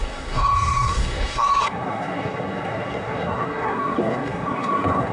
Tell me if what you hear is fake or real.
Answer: fake